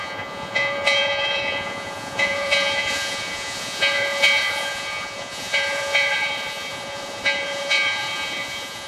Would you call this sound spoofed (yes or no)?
yes